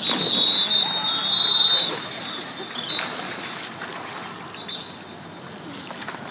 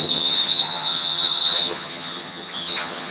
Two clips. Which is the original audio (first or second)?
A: first